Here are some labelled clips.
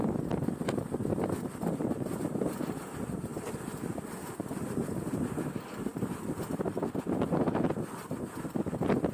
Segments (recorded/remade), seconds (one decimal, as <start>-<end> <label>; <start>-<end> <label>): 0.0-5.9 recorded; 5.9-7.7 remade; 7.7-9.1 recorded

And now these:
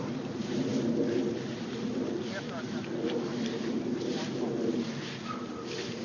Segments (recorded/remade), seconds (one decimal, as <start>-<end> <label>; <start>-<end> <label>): 0.0-6.0 remade

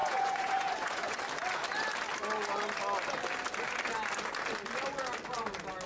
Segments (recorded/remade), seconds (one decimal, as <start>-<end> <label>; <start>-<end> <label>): 0.0-1.2 remade; 1.2-5.9 recorded

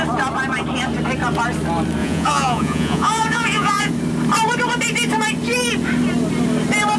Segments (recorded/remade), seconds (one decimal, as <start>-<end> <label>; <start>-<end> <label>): 0.0-2.0 recorded; 2.0-3.9 remade; 3.9-7.0 recorded

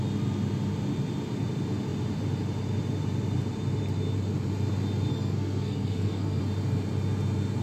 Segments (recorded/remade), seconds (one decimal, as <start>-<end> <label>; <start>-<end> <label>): 0.0-5.1 recorded; 5.1-6.4 remade; 6.4-7.6 recorded

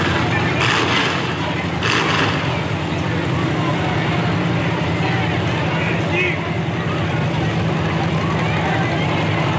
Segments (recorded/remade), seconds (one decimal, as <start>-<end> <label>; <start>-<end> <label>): 0.0-9.6 recorded